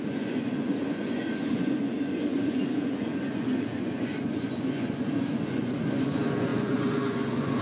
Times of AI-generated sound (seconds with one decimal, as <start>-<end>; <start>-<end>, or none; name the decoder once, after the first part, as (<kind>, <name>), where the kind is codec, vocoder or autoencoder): 0.0-7.6 (vocoder, Vocos)